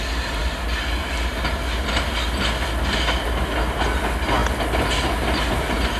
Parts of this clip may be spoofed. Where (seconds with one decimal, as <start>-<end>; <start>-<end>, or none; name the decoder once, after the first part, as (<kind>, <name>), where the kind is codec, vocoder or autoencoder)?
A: none